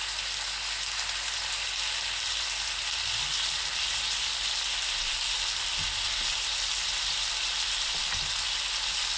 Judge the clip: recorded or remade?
recorded